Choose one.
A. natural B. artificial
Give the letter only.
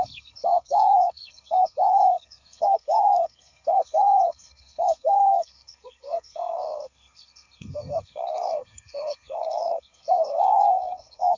B